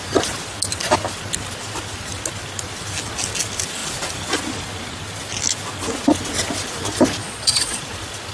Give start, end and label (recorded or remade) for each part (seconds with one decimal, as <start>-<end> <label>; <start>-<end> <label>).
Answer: 0.0-7.2 recorded; 7.2-7.8 remade; 7.8-8.3 recorded